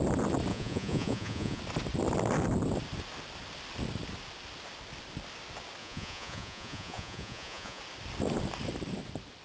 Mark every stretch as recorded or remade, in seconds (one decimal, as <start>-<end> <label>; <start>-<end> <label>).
0.0-0.5 recorded; 0.5-1.6 remade; 1.6-5.8 recorded; 5.8-7.8 remade; 7.8-9.4 recorded